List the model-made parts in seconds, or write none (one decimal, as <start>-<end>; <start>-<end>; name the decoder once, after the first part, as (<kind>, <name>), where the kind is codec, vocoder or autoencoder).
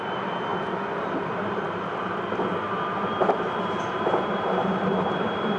0.0-5.6 (vocoder, BigVGAN v2)